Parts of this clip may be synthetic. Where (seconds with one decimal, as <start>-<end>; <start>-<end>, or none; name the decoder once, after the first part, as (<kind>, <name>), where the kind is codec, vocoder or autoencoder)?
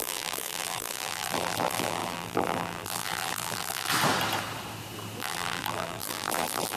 0.0-3.9 (vocoder, BigVGAN v2); 5.2-6.8